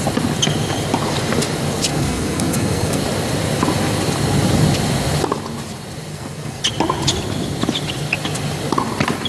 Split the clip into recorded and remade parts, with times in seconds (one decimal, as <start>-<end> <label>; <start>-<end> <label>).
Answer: 0.0-1.9 recorded; 1.9-3.0 remade; 3.0-6.1 recorded; 6.1-6.6 remade; 6.6-9.3 recorded